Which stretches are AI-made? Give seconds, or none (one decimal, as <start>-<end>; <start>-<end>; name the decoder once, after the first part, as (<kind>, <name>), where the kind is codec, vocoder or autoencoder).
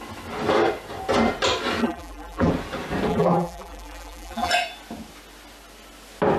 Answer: 1.8-2.5 (vocoder, BigVGAN v2); 3.1-4.5